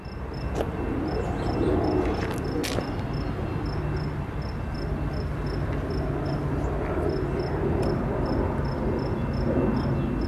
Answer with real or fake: real